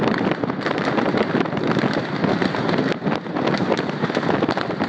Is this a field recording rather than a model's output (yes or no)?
yes